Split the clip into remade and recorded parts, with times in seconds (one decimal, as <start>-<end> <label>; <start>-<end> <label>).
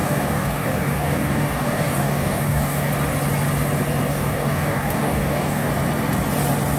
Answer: 0.0-2.9 remade; 2.9-4.1 recorded; 4.1-5.7 remade; 5.7-6.8 recorded